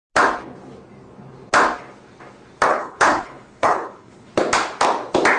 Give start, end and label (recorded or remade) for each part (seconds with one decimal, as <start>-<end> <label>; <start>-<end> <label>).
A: 0.0-2.7 recorded; 2.7-4.3 remade; 4.3-5.4 recorded